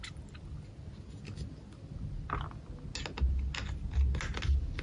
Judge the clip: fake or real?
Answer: real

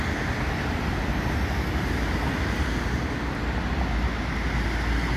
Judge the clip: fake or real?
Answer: real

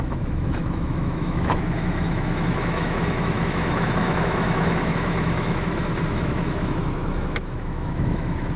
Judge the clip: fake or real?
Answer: fake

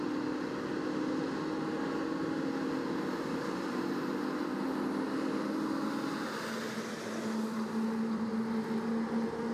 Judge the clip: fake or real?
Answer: real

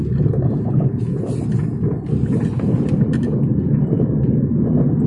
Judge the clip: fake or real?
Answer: real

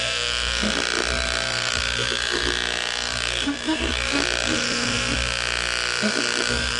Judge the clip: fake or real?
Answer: fake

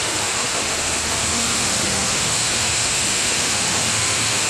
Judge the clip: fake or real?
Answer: fake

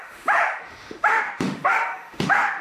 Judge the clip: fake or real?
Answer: fake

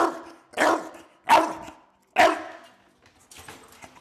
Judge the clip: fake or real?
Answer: real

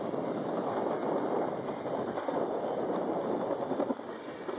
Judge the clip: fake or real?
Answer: real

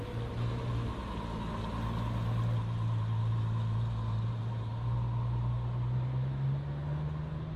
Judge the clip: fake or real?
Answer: real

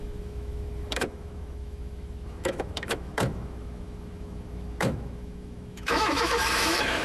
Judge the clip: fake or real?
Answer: fake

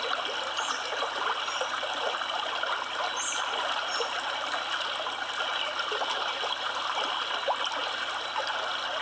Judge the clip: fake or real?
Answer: real